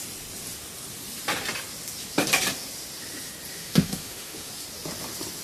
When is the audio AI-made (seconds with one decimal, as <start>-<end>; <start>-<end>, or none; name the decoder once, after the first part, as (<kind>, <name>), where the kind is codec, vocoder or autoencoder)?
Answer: 3.5-4.5 (autoencoder, DAC-VAE)